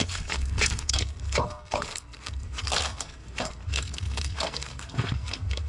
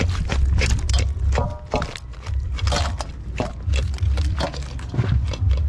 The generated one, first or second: first